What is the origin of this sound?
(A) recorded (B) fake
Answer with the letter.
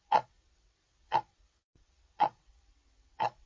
B